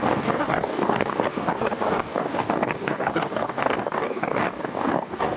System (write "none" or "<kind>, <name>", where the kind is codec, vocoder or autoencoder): codec, DAC